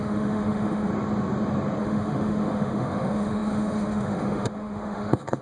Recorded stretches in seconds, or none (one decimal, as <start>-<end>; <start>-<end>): 0.9-1.8